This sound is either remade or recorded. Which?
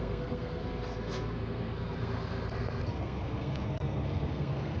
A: remade